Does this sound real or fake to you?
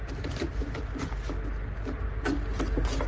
real